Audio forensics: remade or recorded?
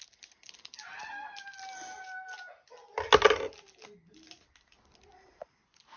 recorded